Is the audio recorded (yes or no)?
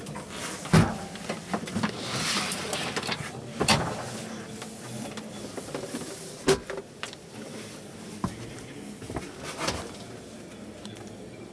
yes